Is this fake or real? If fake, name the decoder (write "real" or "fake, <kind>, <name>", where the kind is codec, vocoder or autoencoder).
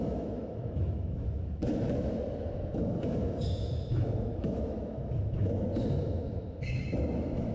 fake, autoencoder, DAC-VAE